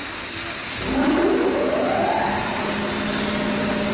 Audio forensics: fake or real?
real